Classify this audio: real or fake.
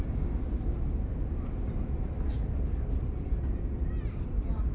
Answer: real